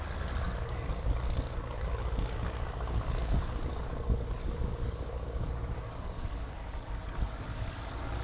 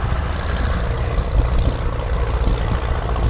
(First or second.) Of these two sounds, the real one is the second